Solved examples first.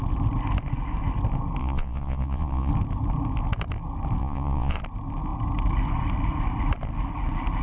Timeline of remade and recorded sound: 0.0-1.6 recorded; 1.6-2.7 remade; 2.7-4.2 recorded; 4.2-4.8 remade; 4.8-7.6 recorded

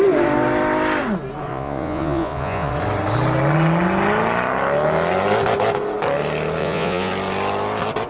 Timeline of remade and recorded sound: 0.0-1.5 recorded; 1.5-2.7 remade; 2.7-6.6 recorded; 6.6-7.1 remade; 7.1-8.1 recorded